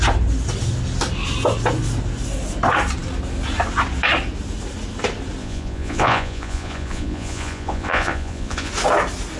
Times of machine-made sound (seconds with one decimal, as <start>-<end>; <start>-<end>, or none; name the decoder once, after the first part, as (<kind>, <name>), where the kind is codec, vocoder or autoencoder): 5.4-8.7 (vocoder, Vocos)